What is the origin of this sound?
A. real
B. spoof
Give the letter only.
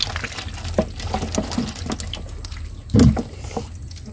A